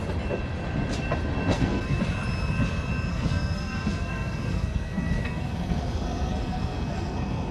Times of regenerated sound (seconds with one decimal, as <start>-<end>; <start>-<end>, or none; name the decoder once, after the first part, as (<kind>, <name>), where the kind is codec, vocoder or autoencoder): 1.5-2.0 (codec, SNAC); 3.1-7.5